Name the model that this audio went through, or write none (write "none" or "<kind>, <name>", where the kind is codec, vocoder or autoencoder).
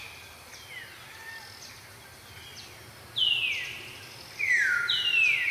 none